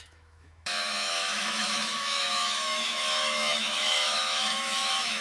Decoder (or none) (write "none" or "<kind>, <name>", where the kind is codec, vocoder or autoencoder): autoencoder, DAC-VAE